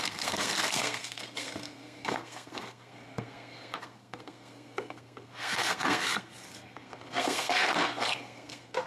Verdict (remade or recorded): remade